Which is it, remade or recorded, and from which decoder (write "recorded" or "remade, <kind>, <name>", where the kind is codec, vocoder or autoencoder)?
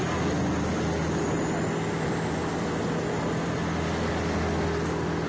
recorded